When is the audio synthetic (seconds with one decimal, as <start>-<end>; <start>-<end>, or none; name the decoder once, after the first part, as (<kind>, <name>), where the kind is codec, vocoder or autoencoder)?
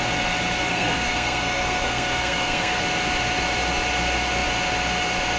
0.7-2.8 (codec, SNAC)